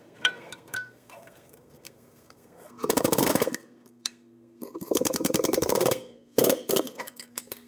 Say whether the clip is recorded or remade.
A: remade